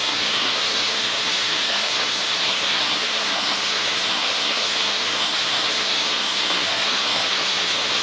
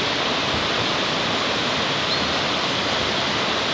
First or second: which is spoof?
first